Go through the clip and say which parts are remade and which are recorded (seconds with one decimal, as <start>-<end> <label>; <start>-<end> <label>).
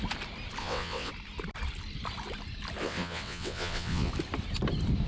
0.0-0.6 recorded; 0.6-1.1 remade; 1.1-2.8 recorded; 2.8-4.1 remade; 4.1-5.1 recorded